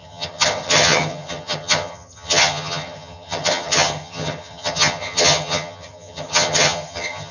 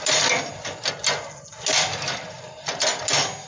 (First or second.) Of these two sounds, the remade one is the first